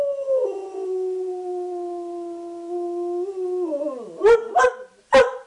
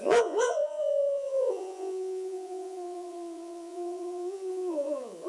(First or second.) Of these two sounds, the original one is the first